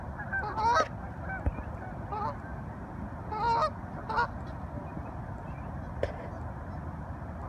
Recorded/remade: recorded